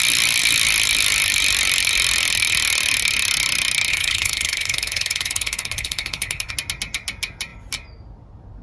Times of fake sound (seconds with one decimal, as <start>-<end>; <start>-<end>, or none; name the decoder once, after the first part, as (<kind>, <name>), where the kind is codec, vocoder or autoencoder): 3.9-6.5 (codec, HILCodec)